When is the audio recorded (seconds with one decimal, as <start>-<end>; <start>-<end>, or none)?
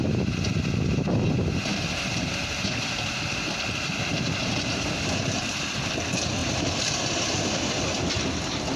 0.0-1.7; 3.6-4.4; 5.9-6.4; 7.2-8.8